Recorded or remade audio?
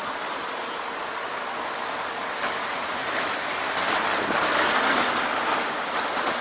recorded